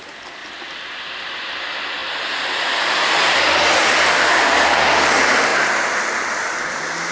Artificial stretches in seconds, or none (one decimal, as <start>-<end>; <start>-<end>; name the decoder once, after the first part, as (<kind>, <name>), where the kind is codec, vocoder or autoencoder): none